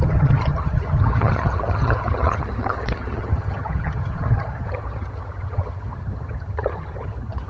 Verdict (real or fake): fake